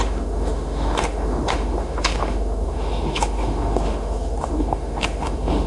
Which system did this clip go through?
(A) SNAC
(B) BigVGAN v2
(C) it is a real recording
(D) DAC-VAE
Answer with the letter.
D